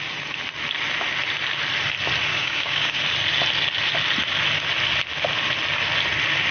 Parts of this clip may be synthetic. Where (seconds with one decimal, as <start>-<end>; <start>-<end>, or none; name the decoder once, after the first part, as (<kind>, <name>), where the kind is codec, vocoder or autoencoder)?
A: 2.3-3.0 (codec, DAC)